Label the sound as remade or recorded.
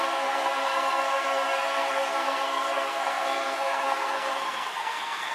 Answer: remade